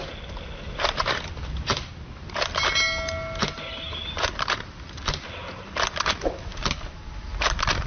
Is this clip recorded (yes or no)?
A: yes